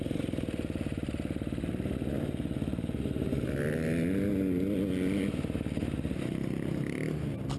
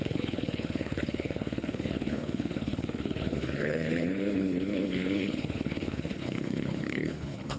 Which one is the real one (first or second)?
first